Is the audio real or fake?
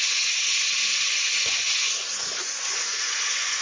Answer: fake